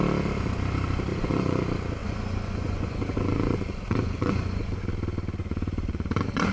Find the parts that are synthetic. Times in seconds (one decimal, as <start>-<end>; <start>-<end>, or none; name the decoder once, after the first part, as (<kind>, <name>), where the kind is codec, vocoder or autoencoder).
1.1-1.6 (vocoder, Vocos); 2.0-4.8; 5.4-6.5